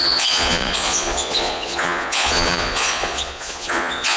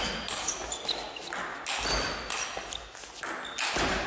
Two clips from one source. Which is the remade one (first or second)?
first